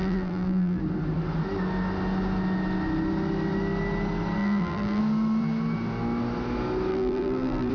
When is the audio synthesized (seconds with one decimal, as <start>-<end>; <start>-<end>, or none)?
0.0-0.8; 4.4-5.0; 6.9-7.7